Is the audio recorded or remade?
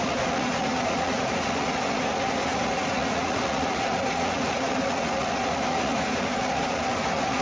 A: remade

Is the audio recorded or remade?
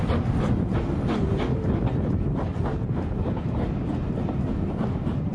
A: recorded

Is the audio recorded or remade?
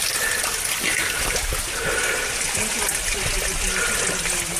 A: recorded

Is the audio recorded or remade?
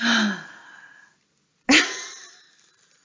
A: recorded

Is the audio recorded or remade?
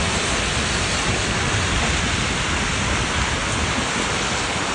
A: recorded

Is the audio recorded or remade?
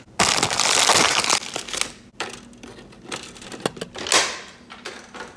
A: recorded